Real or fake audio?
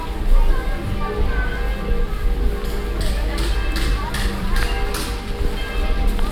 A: real